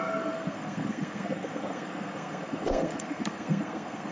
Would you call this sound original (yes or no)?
no